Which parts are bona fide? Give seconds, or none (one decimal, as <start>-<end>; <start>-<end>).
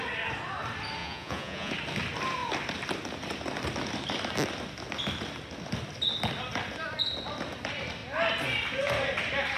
0.0-1.0; 1.7-9.6